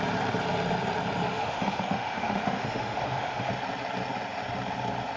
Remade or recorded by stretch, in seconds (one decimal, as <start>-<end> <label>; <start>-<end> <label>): 0.0-1.3 recorded; 1.3-3.5 remade; 3.5-5.2 recorded